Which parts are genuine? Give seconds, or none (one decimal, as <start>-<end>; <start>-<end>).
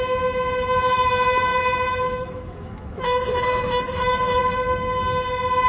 4.4-5.7